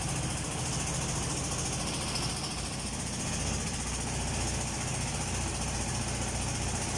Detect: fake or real real